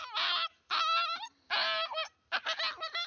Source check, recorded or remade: recorded